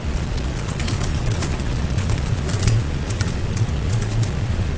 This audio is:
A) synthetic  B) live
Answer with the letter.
A